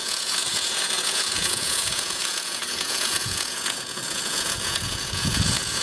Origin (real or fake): fake